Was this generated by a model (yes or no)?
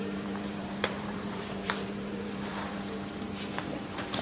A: yes